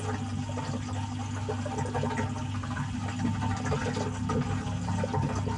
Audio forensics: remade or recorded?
recorded